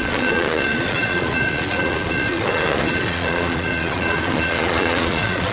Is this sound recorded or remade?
remade